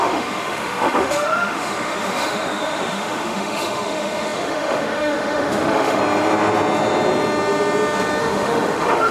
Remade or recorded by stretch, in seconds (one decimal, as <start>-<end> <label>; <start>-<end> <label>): 0.0-6.0 remade; 6.0-8.2 recorded; 8.2-9.1 remade